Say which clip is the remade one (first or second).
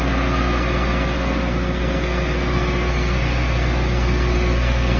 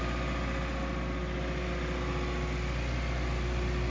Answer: first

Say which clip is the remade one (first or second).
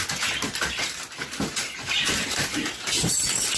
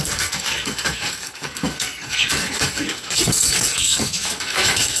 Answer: second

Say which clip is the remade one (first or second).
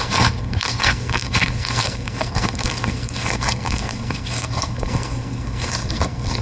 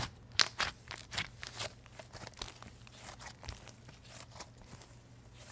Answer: first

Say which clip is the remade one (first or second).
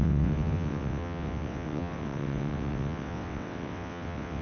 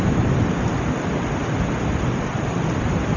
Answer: first